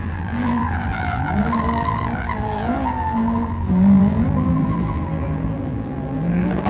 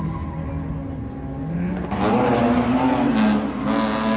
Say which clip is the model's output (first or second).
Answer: first